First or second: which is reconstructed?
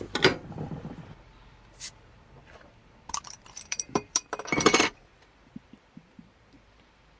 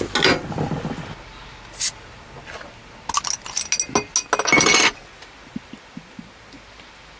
first